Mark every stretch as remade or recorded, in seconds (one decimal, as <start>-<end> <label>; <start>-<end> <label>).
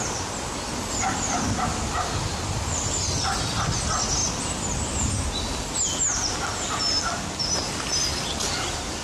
0.0-9.0 recorded